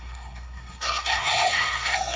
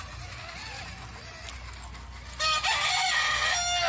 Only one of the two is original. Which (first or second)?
second